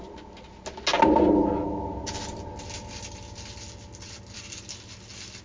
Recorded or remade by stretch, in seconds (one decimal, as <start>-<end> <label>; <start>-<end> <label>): 0.0-5.4 recorded